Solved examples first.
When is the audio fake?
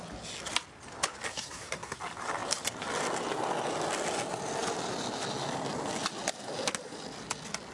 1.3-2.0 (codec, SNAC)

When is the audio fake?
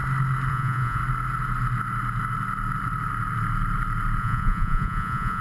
0.5-1.0 (vocoder, Vocos); 4.2-5.4